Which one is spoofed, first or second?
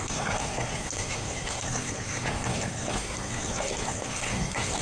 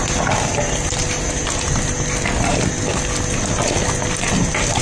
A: first